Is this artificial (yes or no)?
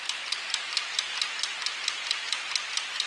no